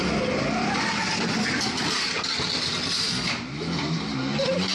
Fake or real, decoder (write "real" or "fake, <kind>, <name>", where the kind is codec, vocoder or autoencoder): real